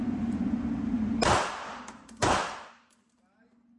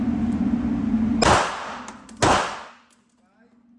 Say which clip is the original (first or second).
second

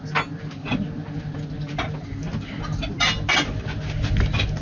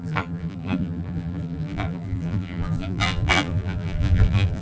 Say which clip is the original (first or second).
first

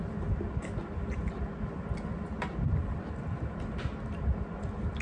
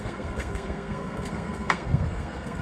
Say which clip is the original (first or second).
first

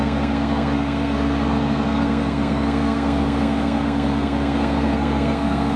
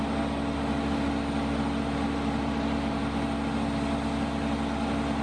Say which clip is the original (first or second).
second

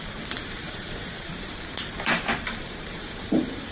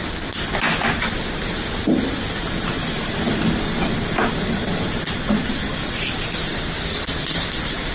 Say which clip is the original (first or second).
second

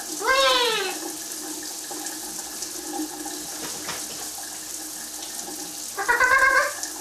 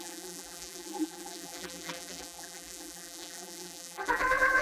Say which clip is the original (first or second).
first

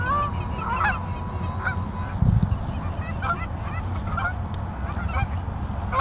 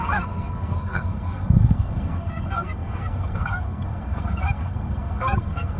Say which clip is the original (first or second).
first